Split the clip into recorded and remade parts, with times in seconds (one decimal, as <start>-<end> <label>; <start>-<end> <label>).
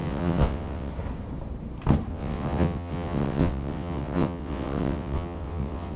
0.0-0.9 remade; 0.9-2.1 recorded; 2.1-6.0 remade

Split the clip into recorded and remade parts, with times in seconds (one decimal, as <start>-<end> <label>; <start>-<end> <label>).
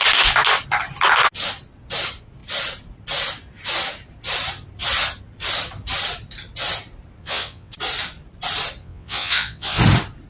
0.0-7.2 recorded; 7.2-7.7 remade; 7.7-8.8 recorded; 8.8-9.8 remade; 9.8-10.3 recorded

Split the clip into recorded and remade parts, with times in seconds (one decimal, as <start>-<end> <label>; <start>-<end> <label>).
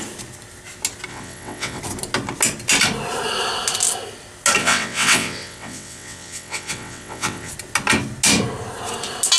0.0-1.1 recorded; 1.1-1.8 remade; 1.8-4.6 recorded; 4.6-7.5 remade; 7.5-9.4 recorded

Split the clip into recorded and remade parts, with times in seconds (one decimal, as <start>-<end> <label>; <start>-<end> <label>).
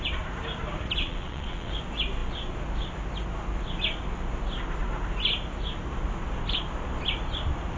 0.0-1.0 recorded; 1.0-1.7 remade; 1.7-7.8 recorded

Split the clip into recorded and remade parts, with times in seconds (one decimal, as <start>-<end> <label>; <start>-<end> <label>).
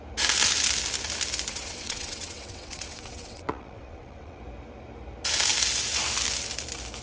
0.0-1.5 recorded; 1.5-4.4 remade; 4.4-7.0 recorded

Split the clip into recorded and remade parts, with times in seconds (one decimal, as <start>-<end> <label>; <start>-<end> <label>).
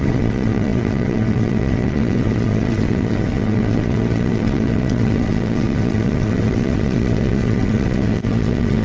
0.0-8.8 remade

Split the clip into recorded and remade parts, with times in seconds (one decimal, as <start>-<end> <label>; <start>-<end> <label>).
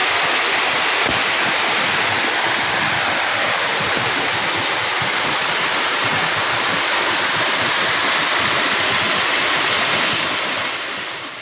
0.0-11.4 recorded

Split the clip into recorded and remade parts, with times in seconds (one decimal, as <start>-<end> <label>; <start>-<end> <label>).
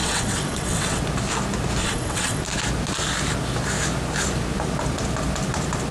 0.0-1.0 remade; 1.0-1.8 recorded; 1.8-2.4 remade; 2.4-5.9 recorded